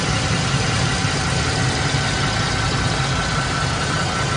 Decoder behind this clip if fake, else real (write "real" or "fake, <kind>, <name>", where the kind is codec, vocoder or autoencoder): real